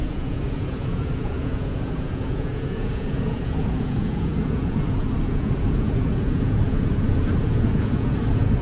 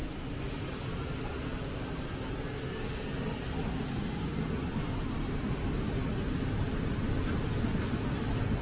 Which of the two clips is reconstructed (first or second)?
first